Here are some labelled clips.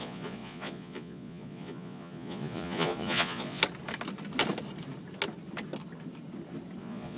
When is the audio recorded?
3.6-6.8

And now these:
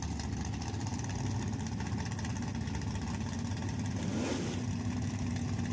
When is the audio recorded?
0.0-5.7